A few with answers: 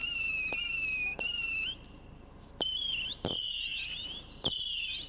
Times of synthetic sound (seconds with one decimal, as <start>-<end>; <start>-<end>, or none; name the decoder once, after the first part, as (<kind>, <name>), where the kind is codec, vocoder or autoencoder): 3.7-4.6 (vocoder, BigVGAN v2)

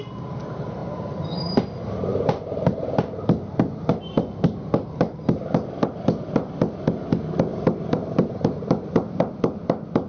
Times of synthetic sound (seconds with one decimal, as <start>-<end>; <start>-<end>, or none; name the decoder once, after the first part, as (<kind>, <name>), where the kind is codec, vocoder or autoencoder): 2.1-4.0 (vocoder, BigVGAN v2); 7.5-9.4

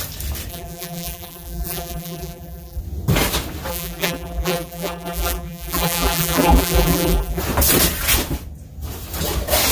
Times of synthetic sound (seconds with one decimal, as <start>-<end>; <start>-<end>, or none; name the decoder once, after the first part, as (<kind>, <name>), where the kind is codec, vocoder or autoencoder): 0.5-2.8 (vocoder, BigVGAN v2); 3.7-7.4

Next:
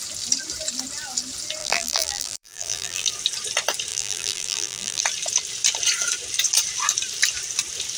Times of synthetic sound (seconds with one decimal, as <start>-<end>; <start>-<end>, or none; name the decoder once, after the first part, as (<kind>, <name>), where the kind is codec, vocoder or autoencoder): 1.6-3.1 (vocoder, BigVGAN v2); 3.9-5.0